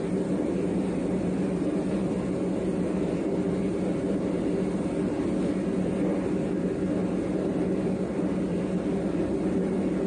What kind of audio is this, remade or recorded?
recorded